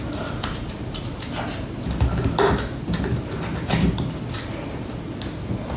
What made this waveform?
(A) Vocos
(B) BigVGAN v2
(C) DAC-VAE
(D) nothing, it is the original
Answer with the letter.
D